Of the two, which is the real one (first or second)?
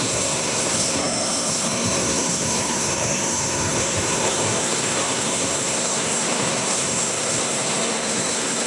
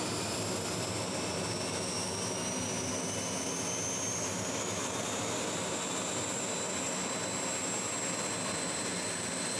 second